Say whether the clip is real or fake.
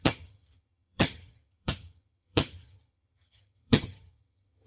fake